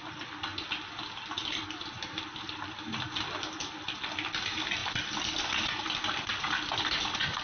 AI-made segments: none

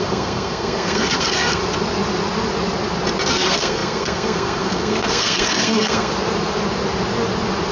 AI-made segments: 0.0-1.6 (codec, SNAC); 3.3-6.1

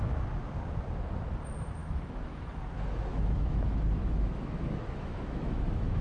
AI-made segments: 1.8-2.6 (autoencoder, DAC-VAE); 3.1-6.0

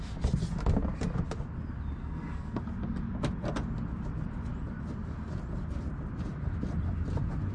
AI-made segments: 2.0-2.6 (codec, SNAC)